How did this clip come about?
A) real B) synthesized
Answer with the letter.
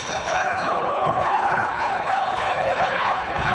B